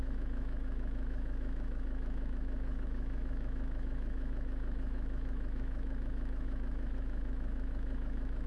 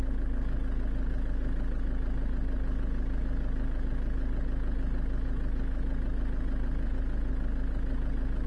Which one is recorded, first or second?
second